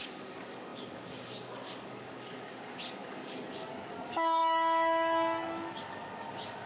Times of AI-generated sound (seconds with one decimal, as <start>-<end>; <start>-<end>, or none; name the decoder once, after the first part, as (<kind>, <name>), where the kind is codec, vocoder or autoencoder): 0.0-6.7 (codec, DAC)

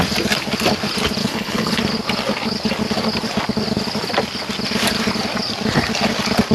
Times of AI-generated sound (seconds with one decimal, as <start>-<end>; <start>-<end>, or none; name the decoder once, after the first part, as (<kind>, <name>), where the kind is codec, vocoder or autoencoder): 1.2-1.8 (codec, HILCodec)